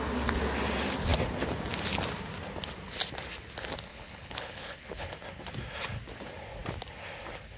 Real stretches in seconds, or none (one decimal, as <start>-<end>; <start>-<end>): 0.0-3.9; 5.1-7.6